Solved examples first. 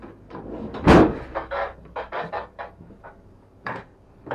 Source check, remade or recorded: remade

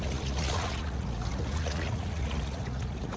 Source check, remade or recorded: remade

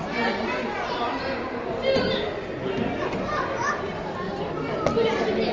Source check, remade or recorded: recorded